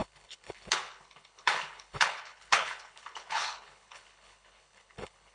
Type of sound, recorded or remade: remade